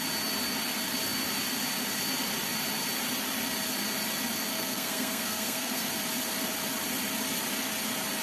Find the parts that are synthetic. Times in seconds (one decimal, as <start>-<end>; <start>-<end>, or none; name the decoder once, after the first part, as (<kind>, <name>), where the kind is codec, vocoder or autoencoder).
4.5-5.9 (codec, SNAC)